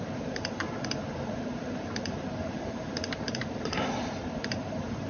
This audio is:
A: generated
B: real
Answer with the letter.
A